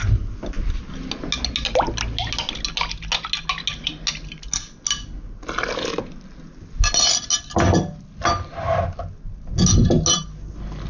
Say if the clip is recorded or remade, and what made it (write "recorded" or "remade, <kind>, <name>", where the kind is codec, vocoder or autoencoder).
recorded